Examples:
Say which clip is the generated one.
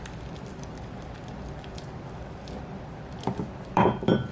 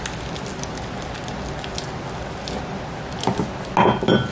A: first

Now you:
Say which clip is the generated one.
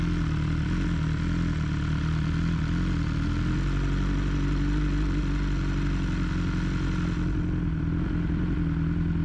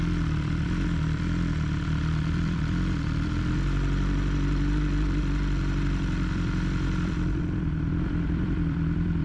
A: second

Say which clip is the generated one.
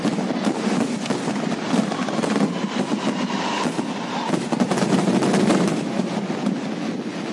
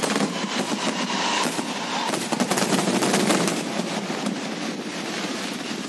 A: second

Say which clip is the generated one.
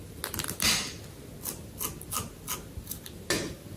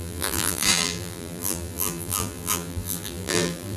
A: second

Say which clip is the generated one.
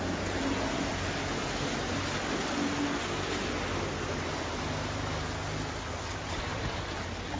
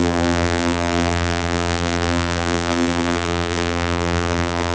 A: second